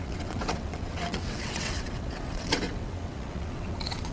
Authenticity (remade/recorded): remade